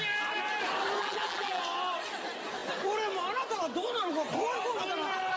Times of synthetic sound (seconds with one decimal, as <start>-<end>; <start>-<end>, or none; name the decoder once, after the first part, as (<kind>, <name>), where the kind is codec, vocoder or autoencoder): 1.0-1.6 (vocoder, BigVGAN v2)